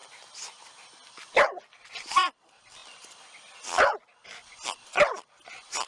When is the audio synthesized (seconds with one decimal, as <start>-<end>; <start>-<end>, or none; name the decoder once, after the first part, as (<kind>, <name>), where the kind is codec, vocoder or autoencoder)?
none